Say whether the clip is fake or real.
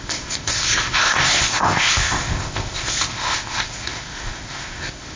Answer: fake